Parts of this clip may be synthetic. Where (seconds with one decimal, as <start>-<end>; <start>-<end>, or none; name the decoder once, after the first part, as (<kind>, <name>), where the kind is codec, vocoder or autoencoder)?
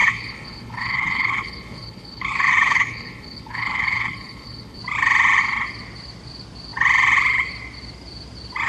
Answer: 0.0-4.8 (codec, HILCodec)